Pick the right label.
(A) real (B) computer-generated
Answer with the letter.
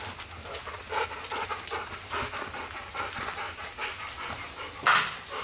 A